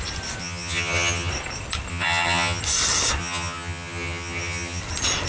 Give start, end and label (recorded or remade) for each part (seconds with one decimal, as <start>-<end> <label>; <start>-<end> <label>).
0.0-0.4 recorded; 0.4-1.3 remade; 1.3-1.9 recorded; 1.9-2.6 remade; 2.6-3.2 recorded; 3.2-4.8 remade; 4.8-5.3 recorded

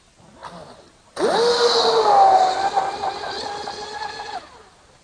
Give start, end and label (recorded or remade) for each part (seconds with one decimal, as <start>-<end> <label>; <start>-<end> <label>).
0.0-5.0 recorded

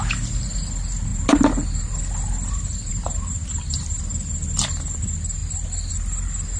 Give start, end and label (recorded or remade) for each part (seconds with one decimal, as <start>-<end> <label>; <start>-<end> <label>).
0.0-6.6 recorded

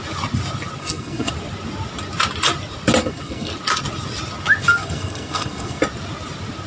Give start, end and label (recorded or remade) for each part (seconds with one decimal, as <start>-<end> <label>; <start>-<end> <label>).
0.0-0.8 recorded; 0.8-1.3 remade; 1.3-3.0 recorded; 3.0-3.5 remade; 3.5-4.6 recorded; 4.6-5.8 remade; 5.8-6.7 recorded